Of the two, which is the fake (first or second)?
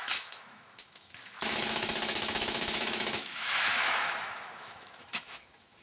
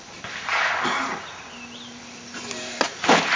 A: first